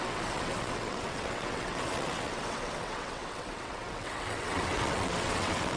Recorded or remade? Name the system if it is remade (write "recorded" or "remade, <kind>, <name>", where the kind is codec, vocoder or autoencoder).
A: remade, vocoder, WaveNeXt